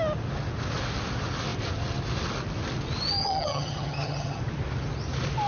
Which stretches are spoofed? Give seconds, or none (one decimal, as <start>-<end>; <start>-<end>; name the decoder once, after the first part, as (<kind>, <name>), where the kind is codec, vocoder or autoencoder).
3.2-4.4 (vocoder, HiFi-GAN)